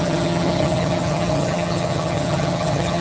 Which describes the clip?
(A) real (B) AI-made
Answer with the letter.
B